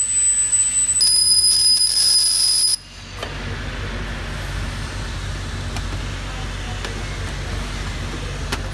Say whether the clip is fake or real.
real